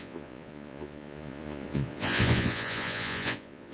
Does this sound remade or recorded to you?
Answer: remade